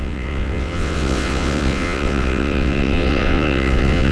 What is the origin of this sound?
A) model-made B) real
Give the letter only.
A